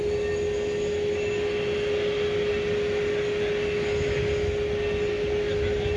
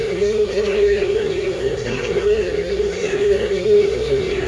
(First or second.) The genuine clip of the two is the first